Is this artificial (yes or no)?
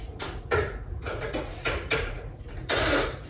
yes